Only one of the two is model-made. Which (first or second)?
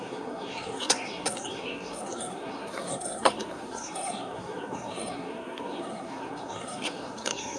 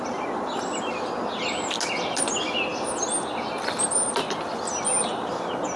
first